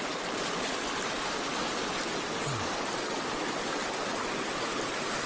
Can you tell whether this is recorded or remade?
recorded